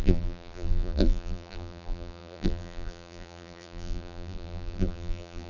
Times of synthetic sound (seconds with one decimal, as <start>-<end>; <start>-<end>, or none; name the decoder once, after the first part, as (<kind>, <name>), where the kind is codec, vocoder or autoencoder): 0.0-5.5 (vocoder, BigVGAN v2)